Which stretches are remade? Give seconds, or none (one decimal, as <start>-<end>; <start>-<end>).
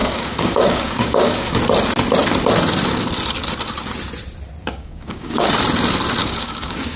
0.0-1.6; 4.6-5.5; 6.2-7.0